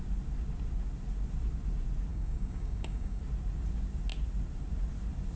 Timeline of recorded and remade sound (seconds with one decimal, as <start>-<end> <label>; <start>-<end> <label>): 0.0-2.1 recorded; 2.1-3.2 remade; 3.2-5.4 recorded